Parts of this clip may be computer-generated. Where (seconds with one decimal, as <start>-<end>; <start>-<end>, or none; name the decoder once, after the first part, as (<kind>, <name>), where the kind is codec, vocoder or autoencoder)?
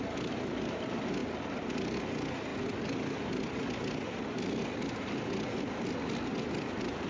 none